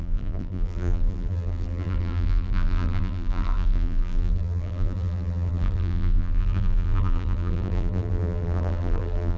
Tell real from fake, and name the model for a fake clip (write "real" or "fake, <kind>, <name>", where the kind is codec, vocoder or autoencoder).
fake, vocoder, BigVGAN v2